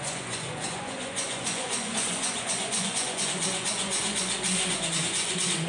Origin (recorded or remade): remade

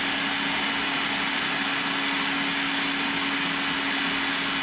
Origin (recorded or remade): recorded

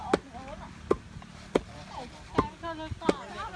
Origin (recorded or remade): recorded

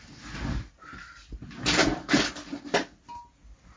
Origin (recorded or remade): recorded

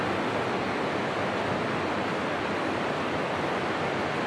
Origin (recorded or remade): recorded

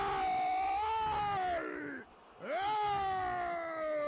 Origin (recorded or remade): recorded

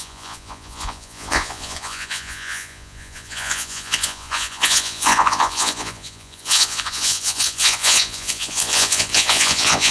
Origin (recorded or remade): remade